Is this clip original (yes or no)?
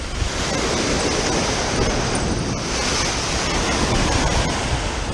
yes